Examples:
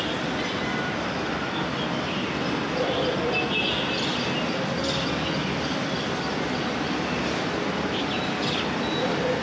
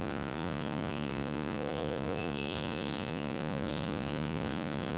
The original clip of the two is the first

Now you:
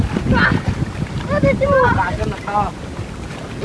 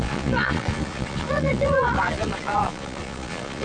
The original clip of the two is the first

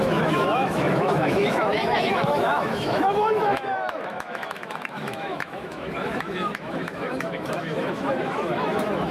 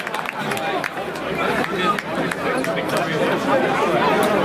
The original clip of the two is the second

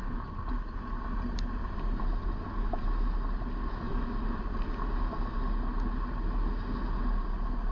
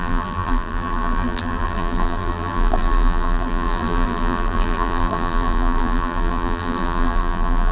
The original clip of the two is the first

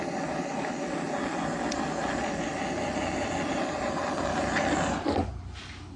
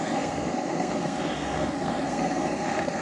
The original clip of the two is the first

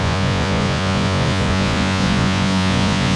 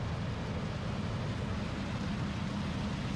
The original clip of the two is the second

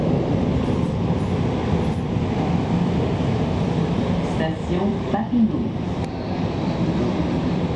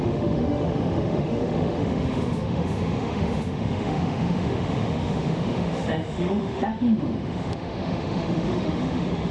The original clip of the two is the first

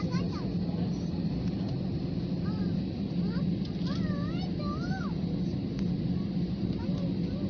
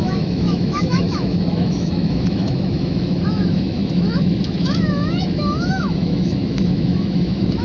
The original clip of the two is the first